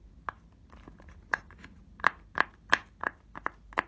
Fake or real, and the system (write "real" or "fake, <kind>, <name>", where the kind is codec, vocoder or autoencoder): real